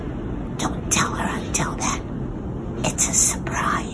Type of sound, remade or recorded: recorded